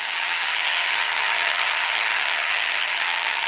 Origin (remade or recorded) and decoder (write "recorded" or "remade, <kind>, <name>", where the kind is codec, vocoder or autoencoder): remade, vocoder, HiFi-GAN